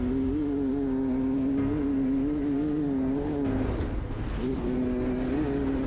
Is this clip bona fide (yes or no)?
yes